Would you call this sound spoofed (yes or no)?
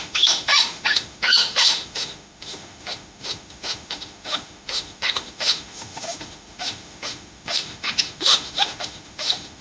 yes